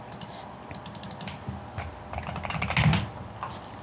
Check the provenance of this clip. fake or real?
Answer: real